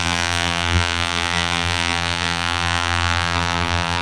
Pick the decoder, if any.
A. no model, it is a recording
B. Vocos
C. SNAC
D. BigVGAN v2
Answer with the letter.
D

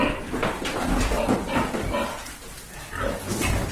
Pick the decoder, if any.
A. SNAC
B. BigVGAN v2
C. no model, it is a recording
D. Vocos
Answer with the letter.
C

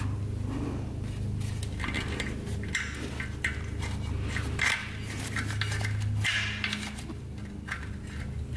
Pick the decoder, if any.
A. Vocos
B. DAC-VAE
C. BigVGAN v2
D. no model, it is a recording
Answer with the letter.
D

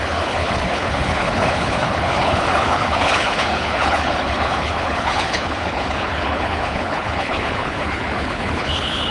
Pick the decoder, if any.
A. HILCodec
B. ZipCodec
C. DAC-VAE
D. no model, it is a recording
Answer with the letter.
A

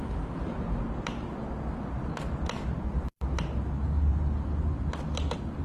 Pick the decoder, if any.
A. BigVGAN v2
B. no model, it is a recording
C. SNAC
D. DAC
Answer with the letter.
B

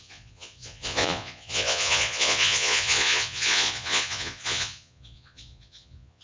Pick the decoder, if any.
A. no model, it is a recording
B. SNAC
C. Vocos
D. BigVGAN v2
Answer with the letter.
C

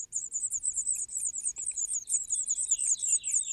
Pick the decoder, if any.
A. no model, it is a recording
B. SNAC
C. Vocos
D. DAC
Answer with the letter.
A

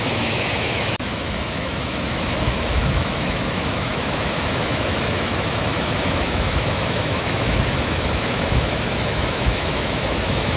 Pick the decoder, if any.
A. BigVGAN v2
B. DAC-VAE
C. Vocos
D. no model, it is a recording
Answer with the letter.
B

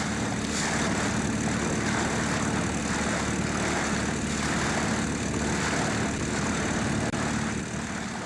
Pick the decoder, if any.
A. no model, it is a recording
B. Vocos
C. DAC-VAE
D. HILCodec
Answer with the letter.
A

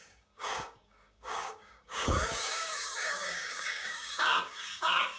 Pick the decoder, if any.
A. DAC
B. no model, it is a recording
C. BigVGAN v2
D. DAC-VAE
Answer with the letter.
A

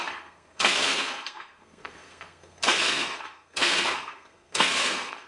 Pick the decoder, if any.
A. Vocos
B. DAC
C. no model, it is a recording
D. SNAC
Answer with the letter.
D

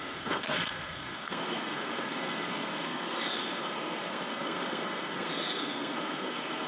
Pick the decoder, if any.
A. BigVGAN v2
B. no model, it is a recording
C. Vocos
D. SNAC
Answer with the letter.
D